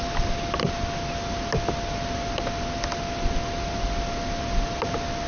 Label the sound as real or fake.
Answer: real